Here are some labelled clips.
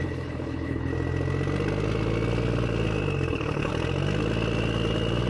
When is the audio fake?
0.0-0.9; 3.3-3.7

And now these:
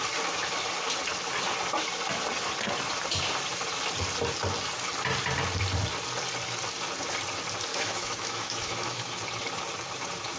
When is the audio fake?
7.7-9.1

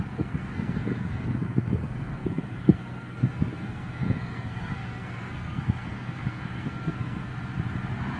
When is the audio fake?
0.0-7.3

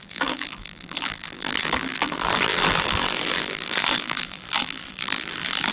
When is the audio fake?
0.0-5.7

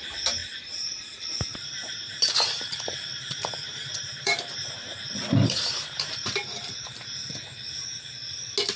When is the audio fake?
0.4-1.2; 1.7-6.3